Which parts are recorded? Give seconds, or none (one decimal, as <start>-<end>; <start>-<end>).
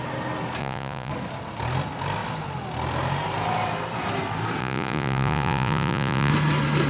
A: 0.0-0.6; 1.1-4.6; 6.3-6.9